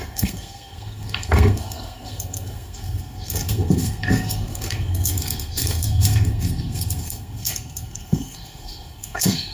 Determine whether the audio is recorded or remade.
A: remade